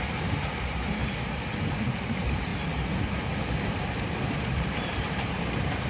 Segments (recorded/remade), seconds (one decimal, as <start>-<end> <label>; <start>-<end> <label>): 0.0-1.0 remade; 1.0-2.1 recorded; 2.1-2.5 remade; 2.5-3.7 recorded; 3.7-5.9 remade